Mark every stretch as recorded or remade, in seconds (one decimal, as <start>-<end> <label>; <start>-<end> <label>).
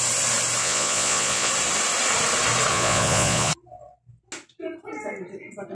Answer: 0.0-0.6 recorded; 0.6-1.5 remade; 1.5-2.7 recorded; 2.7-3.5 remade; 3.5-5.7 recorded